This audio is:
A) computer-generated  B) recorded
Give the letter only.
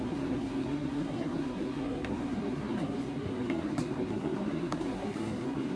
A